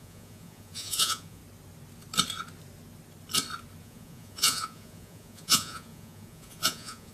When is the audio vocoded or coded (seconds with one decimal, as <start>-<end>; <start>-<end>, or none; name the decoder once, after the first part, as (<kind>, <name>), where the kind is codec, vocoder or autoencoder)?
0.0-1.4 (vocoder, Vocos); 3.8-7.1